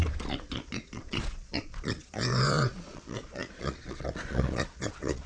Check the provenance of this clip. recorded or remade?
remade